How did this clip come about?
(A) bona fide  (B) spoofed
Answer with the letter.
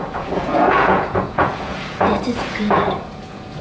B